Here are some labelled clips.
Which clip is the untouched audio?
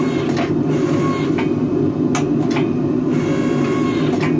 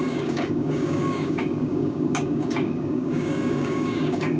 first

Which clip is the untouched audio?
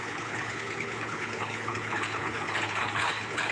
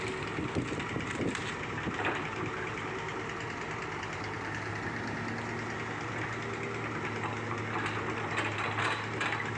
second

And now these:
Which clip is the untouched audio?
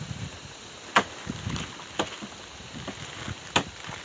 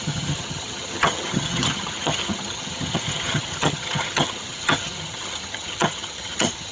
first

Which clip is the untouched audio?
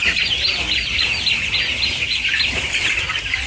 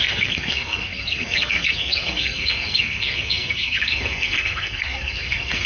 first